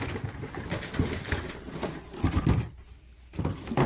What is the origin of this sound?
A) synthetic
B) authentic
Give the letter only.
B